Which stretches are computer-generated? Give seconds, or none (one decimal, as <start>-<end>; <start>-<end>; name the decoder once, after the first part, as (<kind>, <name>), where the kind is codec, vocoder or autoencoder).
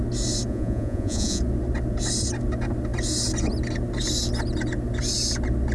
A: 0.5-1.4 (vocoder, Vocos)